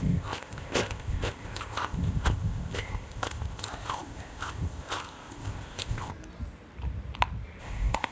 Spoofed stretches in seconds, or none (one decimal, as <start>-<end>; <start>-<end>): 0.0-6.1; 7.6-8.1

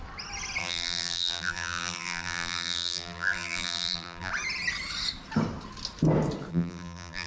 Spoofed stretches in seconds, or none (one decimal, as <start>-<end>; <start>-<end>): 0.6-4.3; 6.5-7.3

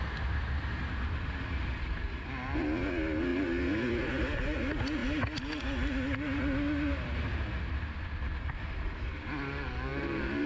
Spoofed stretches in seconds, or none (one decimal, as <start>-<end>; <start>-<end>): none

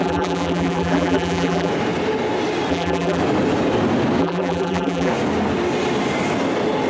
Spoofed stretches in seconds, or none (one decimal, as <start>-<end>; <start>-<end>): 0.0-1.7; 2.7-3.2; 4.2-5.1

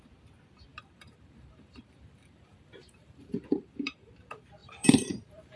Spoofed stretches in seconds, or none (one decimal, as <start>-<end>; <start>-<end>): 0.7-4.1; 4.6-5.6

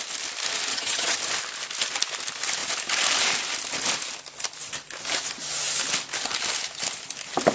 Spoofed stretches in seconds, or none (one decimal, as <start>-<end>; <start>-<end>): 0.7-1.2

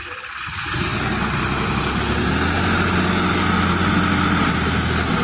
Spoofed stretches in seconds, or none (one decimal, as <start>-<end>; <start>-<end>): none